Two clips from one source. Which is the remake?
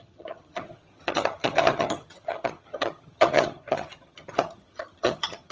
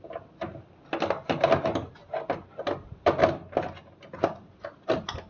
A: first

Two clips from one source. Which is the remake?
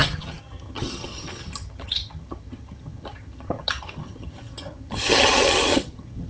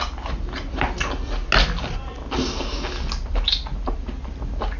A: first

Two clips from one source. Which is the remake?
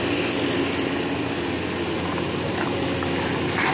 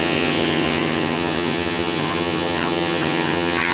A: second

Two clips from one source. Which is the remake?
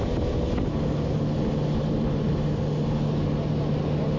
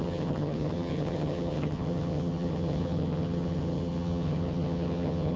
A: second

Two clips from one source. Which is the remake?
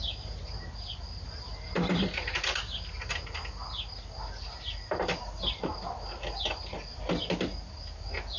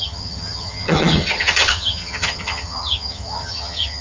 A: second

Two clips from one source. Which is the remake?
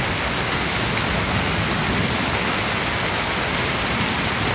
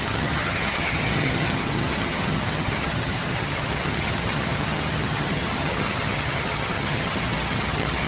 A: second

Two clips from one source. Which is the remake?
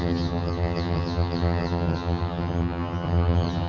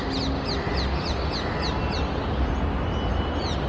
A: first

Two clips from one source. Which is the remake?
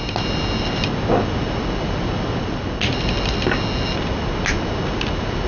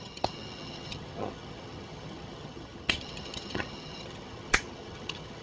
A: second